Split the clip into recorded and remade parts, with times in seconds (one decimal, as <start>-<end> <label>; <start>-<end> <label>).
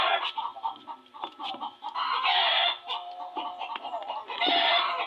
0.0-0.5 recorded; 0.5-1.5 remade; 1.5-5.1 recorded